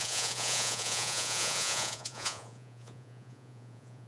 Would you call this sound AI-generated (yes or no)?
yes